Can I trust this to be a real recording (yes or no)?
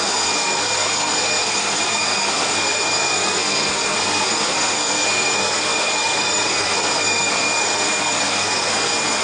no